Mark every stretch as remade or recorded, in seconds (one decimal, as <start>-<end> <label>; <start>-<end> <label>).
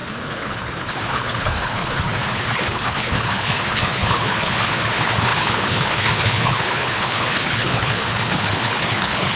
0.0-9.4 remade